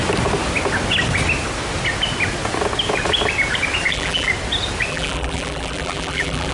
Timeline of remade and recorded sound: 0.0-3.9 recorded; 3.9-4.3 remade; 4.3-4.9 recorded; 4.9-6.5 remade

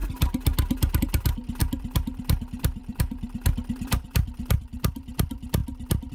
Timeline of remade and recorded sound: 0.0-1.0 recorded; 1.0-5.6 remade; 5.6-6.1 recorded

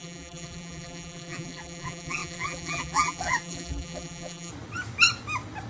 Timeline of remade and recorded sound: 0.0-4.5 remade; 4.5-5.7 recorded

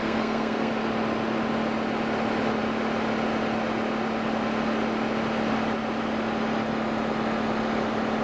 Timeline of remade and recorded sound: 0.0-0.7 remade; 0.7-8.2 recorded

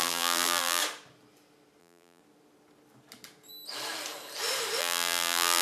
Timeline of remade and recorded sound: 0.0-0.8 remade; 0.8-1.8 recorded; 1.8-2.2 remade; 2.2-4.8 recorded; 4.8-5.6 remade

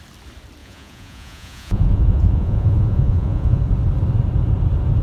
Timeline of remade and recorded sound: 0.0-0.6 recorded; 0.6-3.6 remade; 3.6-5.0 recorded

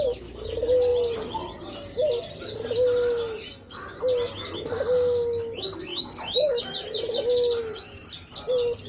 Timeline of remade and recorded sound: 0.0-5.9 recorded; 5.9-6.6 remade; 6.6-7.6 recorded; 7.6-8.1 remade; 8.1-8.9 recorded